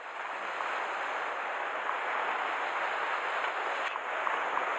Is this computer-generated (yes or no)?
no